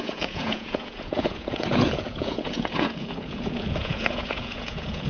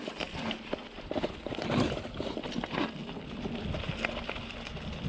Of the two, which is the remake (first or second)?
first